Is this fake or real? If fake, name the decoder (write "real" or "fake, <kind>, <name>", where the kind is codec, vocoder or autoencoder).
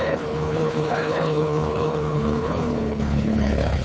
fake, codec, HILCodec